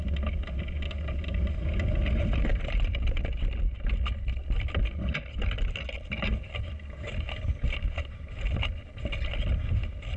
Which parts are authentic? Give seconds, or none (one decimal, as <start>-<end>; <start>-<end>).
0.0-2.5; 3.4-10.2